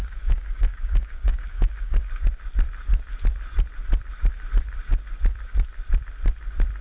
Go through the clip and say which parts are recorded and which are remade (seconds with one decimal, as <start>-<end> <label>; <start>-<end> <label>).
0.0-2.1 remade; 2.1-6.8 recorded